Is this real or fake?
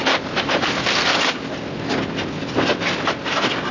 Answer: real